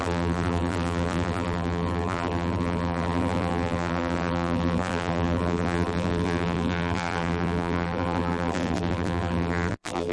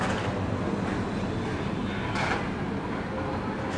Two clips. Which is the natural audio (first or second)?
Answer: second